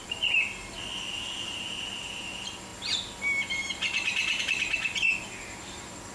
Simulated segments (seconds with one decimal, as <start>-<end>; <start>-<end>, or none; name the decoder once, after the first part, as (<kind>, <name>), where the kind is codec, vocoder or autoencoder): none